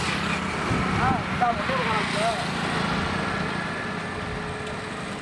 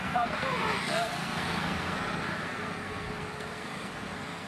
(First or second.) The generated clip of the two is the second